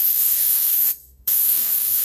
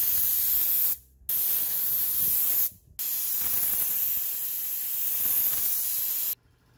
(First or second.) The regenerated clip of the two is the first